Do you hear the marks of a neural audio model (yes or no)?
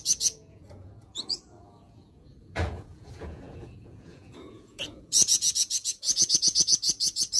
yes